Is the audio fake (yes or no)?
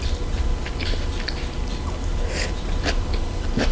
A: no